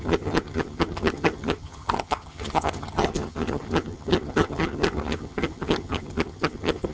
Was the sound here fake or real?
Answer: fake